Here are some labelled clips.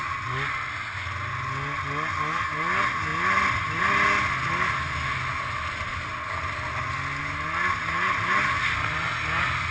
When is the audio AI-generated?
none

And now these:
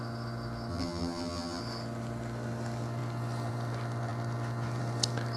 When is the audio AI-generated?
0.7-1.6 (vocoder, BigVGAN v2)